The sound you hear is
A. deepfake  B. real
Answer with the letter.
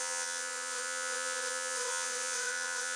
A